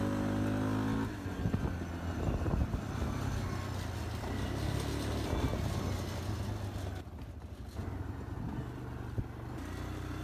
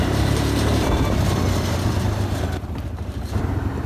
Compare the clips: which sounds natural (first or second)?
first